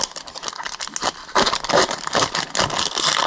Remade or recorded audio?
recorded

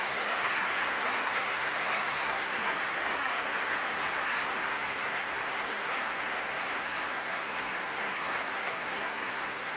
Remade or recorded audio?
remade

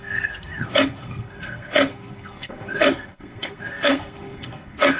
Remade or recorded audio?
remade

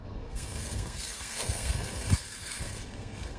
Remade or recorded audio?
remade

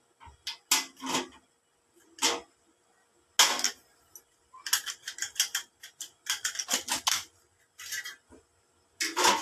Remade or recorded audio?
recorded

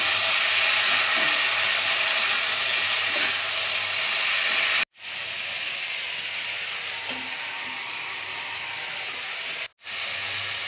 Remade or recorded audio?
recorded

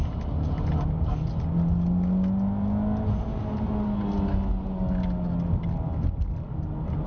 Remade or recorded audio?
recorded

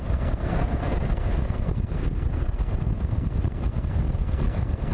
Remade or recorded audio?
remade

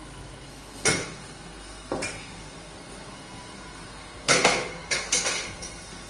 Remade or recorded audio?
remade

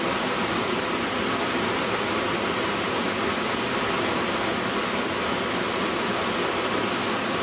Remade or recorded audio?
recorded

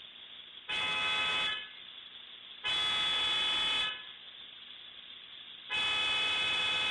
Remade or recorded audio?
recorded